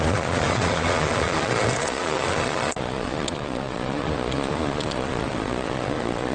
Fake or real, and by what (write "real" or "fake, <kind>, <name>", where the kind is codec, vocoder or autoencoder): fake, vocoder, Vocos